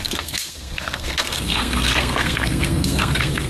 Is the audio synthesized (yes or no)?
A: yes